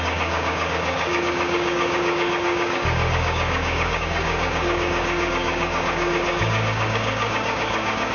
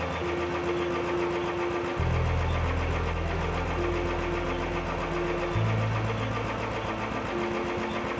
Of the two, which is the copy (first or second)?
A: first